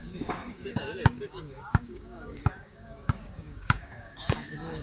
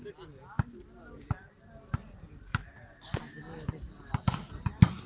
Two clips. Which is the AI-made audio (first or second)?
first